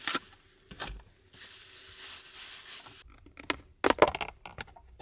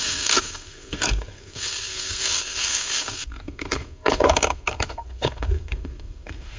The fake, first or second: second